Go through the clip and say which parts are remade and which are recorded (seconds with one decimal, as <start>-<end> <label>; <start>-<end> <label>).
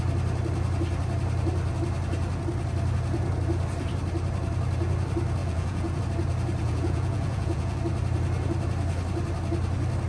0.0-5.4 recorded; 5.4-6.0 remade; 6.0-6.6 recorded; 6.6-7.8 remade; 7.8-10.1 recorded